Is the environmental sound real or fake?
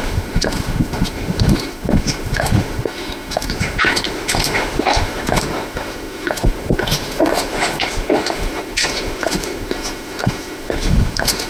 fake